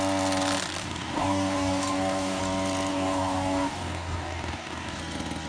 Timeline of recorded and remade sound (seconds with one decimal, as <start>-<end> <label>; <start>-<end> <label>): 0.0-0.8 recorded; 0.8-2.4 remade; 2.4-2.9 recorded; 2.9-5.0 remade; 5.0-5.5 recorded